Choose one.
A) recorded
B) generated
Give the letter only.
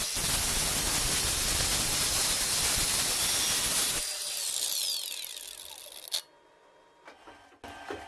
A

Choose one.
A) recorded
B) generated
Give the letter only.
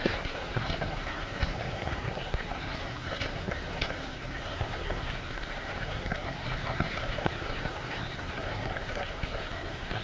B